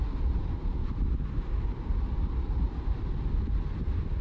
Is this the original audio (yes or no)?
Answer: yes